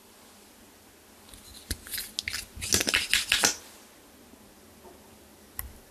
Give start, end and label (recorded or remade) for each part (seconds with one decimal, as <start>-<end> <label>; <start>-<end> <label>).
0.0-5.9 recorded